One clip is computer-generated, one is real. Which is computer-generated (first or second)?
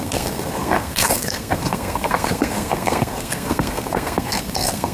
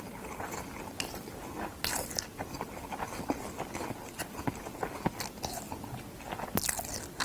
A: first